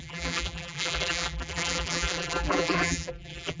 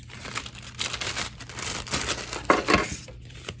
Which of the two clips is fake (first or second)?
first